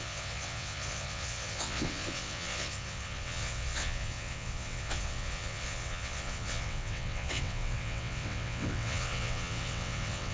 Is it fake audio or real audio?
fake